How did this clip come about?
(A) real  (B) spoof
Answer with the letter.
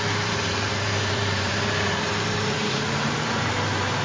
B